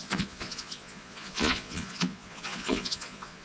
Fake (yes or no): yes